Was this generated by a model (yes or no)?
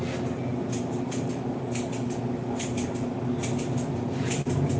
no